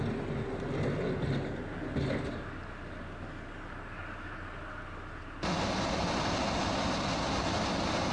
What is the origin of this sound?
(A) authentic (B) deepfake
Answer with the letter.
A